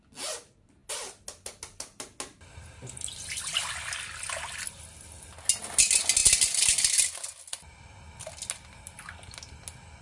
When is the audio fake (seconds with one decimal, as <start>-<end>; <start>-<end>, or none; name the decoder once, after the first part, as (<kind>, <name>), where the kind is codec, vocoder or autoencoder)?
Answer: none